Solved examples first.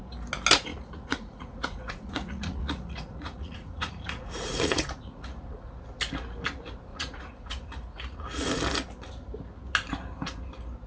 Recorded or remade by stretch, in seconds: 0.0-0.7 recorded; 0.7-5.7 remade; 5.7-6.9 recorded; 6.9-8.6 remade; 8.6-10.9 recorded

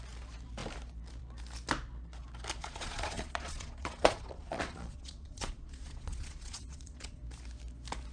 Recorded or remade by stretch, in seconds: 0.0-2.6 recorded; 2.6-7.2 remade; 7.2-8.1 recorded

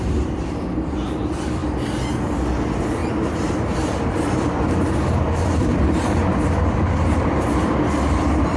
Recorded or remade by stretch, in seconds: 0.0-1.6 remade; 1.6-2.3 recorded; 2.3-8.6 remade

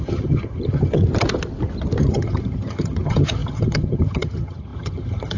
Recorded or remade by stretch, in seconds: 0.0-1.0 remade; 1.0-2.0 recorded; 2.0-5.4 remade

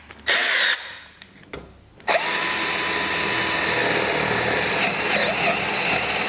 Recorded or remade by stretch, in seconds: 0.0-6.3 recorded